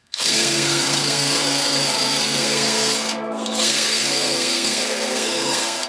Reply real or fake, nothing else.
fake